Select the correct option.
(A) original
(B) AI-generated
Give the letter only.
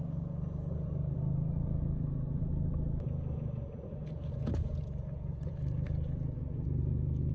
B